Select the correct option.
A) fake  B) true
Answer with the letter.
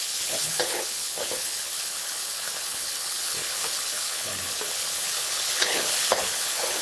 A